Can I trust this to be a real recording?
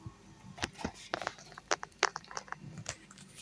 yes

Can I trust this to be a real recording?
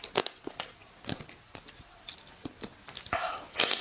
yes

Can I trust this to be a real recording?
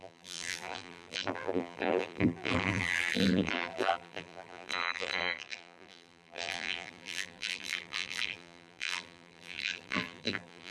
no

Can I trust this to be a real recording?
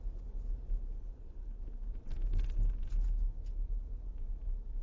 yes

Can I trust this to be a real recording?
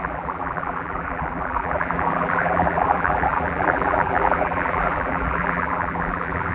no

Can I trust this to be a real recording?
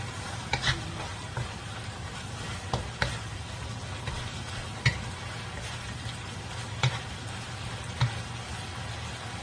yes